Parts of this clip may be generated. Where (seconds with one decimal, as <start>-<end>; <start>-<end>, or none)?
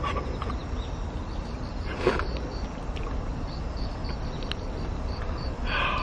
none